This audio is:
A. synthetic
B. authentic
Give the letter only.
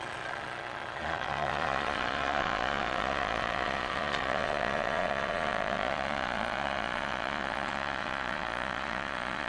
A